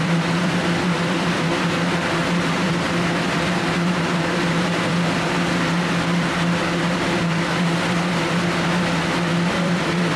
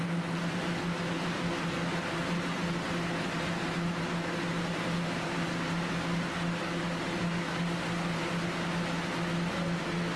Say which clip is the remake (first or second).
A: first